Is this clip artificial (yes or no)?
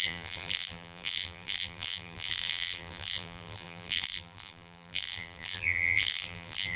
yes